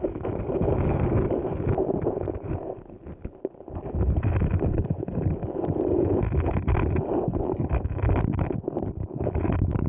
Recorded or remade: recorded